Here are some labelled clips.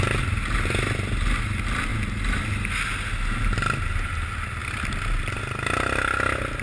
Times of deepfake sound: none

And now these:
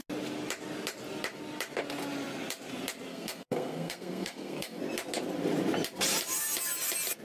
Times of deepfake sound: 3.1-4.8

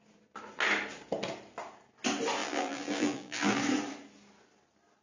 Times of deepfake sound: 2.4-3.6

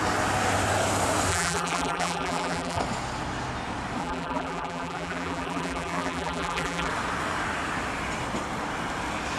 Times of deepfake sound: 1.3-2.8; 4.0-6.9